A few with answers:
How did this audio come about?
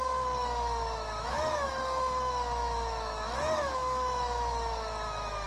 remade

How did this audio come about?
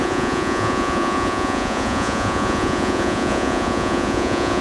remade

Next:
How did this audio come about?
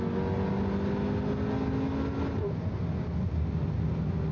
recorded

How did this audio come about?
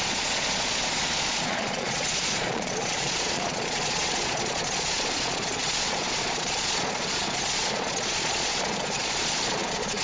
remade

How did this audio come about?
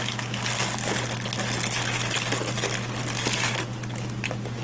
recorded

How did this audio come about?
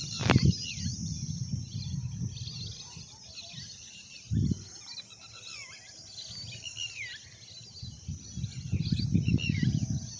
recorded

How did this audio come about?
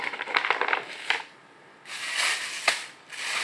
recorded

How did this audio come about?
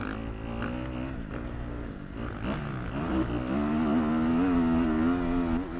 recorded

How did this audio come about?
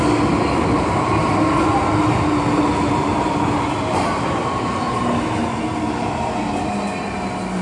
recorded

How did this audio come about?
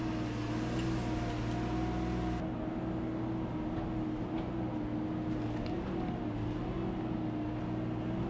recorded